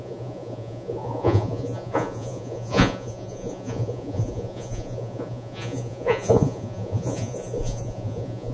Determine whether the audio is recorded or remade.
remade